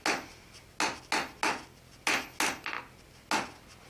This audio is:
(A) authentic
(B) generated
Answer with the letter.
A